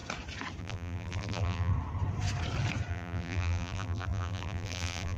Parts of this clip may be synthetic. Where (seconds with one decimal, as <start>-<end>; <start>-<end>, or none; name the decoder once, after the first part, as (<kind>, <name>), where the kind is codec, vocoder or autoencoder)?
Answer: 0.6-1.7 (vocoder, BigVGAN v2); 2.9-5.2